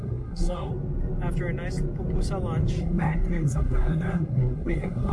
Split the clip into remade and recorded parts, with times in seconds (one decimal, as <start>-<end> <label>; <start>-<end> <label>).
0.0-0.7 remade; 0.7-2.8 recorded; 2.8-5.1 remade